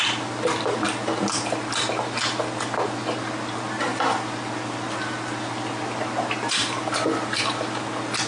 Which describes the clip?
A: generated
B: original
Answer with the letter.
B